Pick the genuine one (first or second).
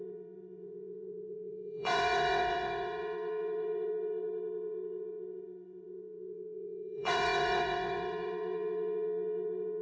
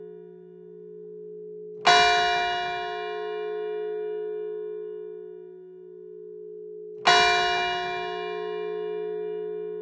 second